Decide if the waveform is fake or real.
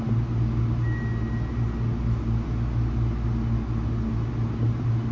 real